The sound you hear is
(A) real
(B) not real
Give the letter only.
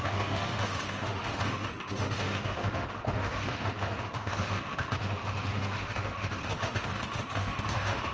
B